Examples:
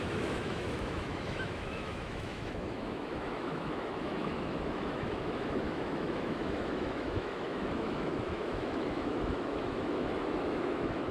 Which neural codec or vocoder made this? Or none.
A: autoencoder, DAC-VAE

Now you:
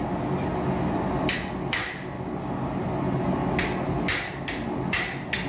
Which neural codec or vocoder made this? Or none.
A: none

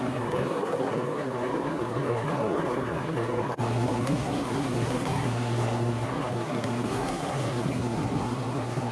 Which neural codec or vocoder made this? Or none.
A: codec, SNAC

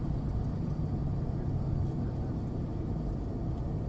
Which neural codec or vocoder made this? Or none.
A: none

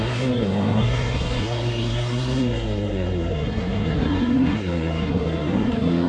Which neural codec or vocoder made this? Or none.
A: codec, SNAC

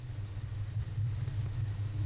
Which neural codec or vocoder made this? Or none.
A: none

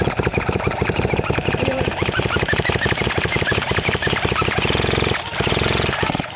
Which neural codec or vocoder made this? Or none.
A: vocoder, BigVGAN v2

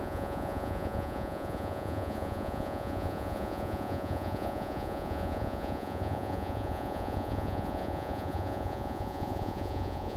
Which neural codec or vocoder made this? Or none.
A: vocoder, Vocos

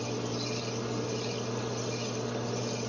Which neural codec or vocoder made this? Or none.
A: none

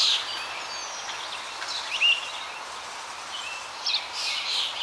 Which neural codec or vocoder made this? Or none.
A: none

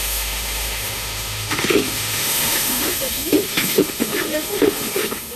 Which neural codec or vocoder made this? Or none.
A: autoencoder, DAC-VAE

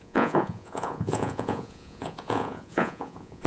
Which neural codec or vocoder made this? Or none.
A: vocoder, Vocos